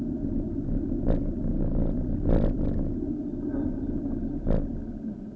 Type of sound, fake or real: real